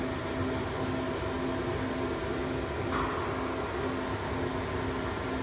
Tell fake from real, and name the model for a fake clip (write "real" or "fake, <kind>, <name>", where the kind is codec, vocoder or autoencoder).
real